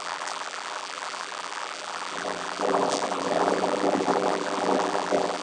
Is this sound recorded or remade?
remade